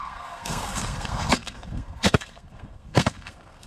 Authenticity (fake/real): fake